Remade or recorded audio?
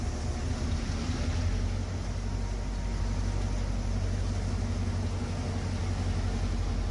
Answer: recorded